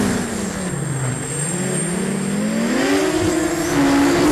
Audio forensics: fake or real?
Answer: real